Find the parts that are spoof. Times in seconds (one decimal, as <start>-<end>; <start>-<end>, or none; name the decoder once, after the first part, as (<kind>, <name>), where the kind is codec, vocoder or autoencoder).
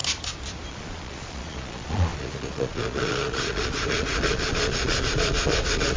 0.7-6.0 (vocoder, Vocos)